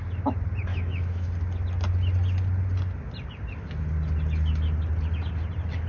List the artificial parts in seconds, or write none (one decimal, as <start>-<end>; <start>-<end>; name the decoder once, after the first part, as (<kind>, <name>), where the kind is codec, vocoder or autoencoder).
0.7-1.3 (autoencoder, DAC-VAE)